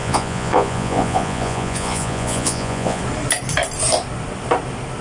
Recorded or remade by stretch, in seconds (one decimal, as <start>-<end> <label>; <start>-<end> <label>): 0.0-3.0 remade; 3.0-5.0 recorded